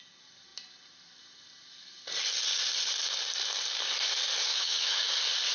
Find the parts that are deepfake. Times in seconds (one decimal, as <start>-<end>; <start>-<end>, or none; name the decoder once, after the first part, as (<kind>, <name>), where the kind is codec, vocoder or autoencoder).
4.5-5.1 (autoencoder, DAC-VAE)